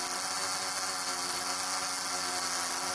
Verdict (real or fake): real